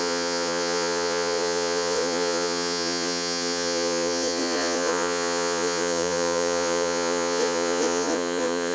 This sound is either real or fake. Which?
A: fake